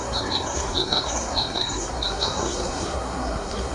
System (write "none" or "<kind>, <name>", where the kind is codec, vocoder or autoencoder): codec, SNAC